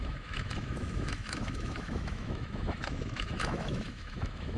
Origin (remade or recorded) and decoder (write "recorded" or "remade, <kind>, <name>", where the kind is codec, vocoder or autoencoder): remade, autoencoder, DAC-VAE